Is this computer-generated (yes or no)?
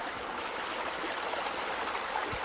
no